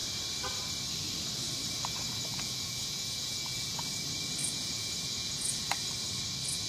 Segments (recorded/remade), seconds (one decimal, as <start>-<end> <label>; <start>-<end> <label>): 0.0-2.3 recorded; 2.3-3.8 remade; 3.8-4.4 recorded; 4.4-5.7 remade; 5.7-6.7 recorded